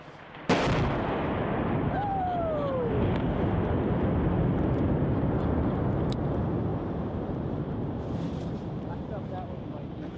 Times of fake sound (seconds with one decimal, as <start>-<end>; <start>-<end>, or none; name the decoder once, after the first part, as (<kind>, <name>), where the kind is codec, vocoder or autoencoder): 6.7-9.2 (vocoder, BigVGAN v2)